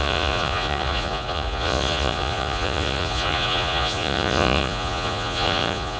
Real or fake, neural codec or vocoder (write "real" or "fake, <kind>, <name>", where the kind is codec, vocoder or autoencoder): fake, vocoder, Vocos